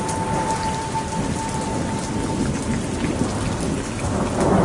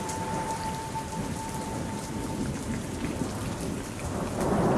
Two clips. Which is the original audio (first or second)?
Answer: first